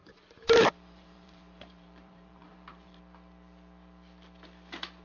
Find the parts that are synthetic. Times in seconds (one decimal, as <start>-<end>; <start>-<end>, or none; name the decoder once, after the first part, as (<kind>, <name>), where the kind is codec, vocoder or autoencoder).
0.0-3.0 (vocoder, BigVGAN v2)